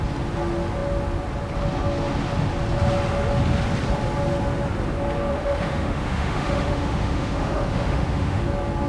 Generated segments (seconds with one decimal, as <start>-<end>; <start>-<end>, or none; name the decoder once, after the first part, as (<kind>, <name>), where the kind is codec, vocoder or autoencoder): 5.3-8.4 (autoencoder, DAC-VAE)